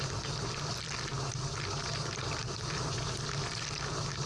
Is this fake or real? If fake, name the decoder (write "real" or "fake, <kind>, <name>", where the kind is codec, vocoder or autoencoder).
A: real